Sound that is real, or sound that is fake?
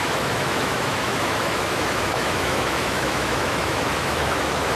fake